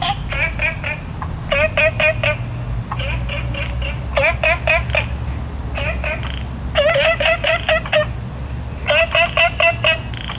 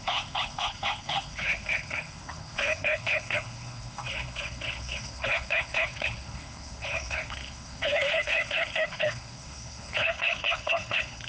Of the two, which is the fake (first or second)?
second